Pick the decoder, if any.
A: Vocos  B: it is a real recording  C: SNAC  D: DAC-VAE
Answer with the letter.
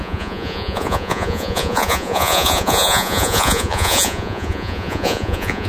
A